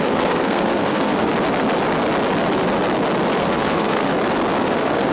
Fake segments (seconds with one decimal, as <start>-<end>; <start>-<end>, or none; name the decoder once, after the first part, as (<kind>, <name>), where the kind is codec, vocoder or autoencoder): 0.0-1.3 (codec, SNAC); 3.4-4.1; 4.6-5.1